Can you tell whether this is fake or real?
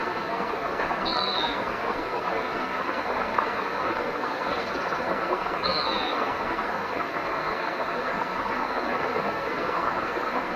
fake